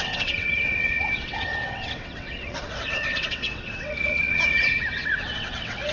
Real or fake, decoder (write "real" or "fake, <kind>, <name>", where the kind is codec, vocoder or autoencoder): fake, vocoder, WaveNeXt